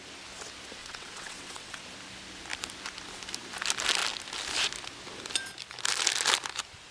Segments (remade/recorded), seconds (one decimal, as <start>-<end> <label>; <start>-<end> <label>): 0.0-0.8 recorded; 0.8-1.8 remade; 1.8-6.9 recorded